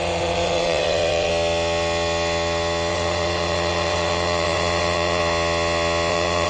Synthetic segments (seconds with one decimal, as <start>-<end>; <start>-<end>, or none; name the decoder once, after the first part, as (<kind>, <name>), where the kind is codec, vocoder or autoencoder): 0.0-1.3 (vocoder, WaveNeXt); 2.9-5.2; 6.1-6.5